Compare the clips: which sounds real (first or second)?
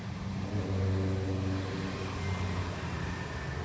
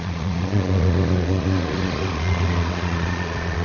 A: first